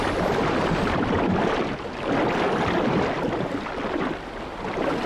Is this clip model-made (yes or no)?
no